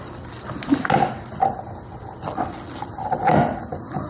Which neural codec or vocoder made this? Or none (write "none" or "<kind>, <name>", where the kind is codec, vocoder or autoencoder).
none